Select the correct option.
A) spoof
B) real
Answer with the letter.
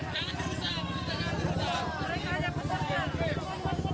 B